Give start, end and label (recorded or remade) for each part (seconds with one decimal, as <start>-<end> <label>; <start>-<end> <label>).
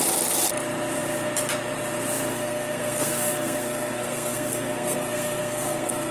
0.0-2.3 recorded; 2.3-6.1 remade